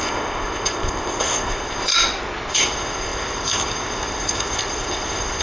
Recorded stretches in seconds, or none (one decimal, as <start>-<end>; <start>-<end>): 1.9-2.5